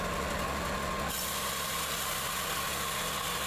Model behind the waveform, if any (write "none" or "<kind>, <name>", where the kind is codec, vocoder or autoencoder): none